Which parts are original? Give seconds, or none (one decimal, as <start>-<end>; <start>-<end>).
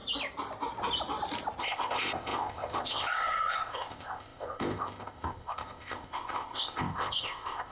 0.0-1.6